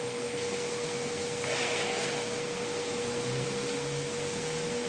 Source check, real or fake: fake